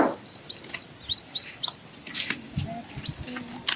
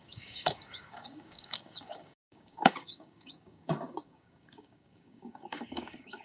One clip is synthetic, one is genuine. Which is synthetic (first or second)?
second